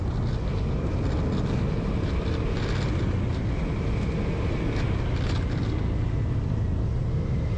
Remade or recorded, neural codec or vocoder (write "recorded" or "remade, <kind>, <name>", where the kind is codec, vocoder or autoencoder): recorded